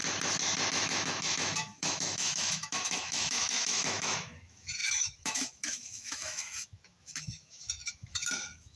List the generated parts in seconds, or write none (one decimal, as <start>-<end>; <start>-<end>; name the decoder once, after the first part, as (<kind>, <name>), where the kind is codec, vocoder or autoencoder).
0.7-8.8 (autoencoder, DAC-VAE)